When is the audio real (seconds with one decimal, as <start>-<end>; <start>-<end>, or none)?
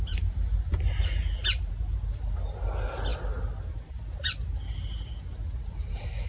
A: 0.0-6.3